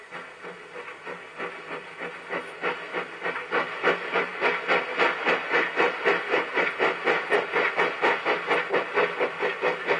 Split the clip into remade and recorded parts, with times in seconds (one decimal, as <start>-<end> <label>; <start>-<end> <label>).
0.0-10.0 recorded